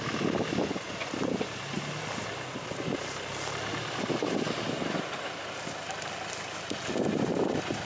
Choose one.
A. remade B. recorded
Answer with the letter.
B